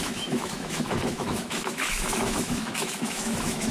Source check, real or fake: fake